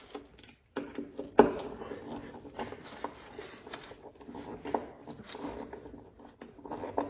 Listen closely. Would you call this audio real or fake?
real